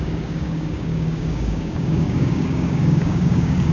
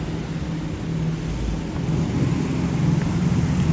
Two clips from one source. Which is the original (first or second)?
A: second